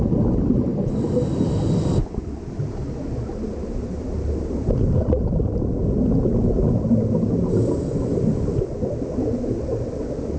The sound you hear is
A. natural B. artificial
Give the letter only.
A